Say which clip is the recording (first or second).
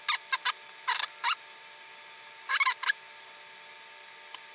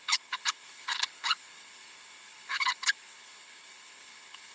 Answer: first